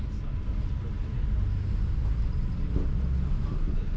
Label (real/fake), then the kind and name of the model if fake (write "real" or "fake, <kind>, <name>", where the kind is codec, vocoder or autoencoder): fake, vocoder, BigVGAN v2